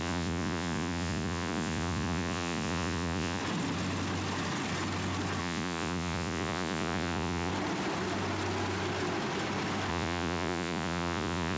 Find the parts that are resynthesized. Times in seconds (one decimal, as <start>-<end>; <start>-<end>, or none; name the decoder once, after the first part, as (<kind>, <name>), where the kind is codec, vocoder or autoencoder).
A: 0.0-3.4 (vocoder, Vocos); 5.4-7.5; 9.9-11.6